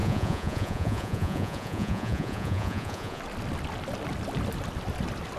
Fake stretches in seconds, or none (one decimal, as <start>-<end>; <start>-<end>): 0.0-3.2